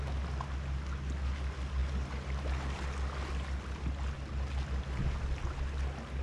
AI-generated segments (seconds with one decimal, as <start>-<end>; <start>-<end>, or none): none